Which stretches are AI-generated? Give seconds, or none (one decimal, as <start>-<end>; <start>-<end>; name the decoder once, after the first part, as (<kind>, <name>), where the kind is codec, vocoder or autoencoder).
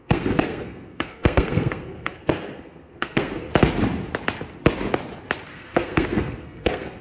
0.0-3.5 (codec, SNAC); 5.5-7.0